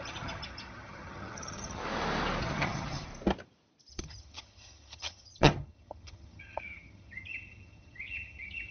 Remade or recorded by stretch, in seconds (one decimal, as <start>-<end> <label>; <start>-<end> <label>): 0.0-1.8 remade; 1.8-2.4 recorded; 2.4-3.1 remade; 3.1-3.9 recorded; 3.9-8.7 remade